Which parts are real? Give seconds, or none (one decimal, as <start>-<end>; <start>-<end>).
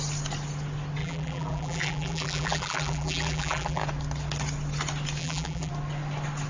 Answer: 0.0-1.0; 3.8-5.2; 5.7-6.5